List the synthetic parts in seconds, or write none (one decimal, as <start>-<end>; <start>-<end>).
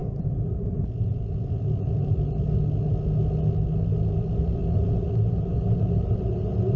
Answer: none